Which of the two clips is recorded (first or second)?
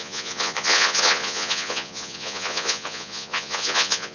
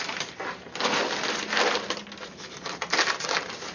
second